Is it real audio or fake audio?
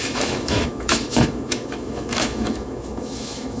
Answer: fake